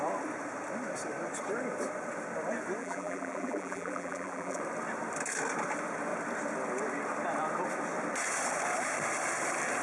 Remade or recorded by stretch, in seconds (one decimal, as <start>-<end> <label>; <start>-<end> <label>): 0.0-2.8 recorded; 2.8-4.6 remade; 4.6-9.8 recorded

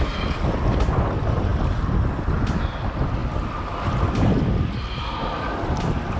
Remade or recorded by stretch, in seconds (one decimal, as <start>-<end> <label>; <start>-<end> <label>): 0.0-6.2 recorded

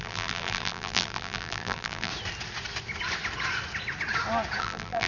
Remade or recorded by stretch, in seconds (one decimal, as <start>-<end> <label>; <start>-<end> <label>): 0.0-2.1 remade; 2.1-4.6 recorded; 4.6-5.1 remade

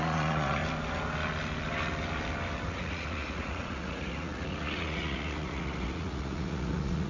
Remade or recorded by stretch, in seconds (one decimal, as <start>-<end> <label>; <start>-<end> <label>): 0.0-0.6 remade; 0.6-2.7 recorded; 2.7-7.1 remade

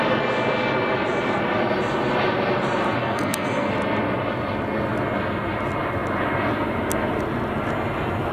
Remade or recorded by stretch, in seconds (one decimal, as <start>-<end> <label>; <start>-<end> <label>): 0.0-3.0 recorded; 3.0-3.7 remade; 3.7-8.3 recorded

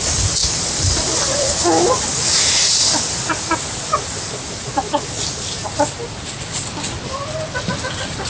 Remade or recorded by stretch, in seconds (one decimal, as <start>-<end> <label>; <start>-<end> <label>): 0.0-8.3 recorded

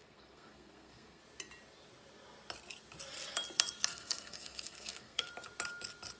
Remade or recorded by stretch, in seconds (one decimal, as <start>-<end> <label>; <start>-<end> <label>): 0.0-1.2 remade; 1.2-3.9 recorded; 3.9-5.3 remade; 5.3-6.2 recorded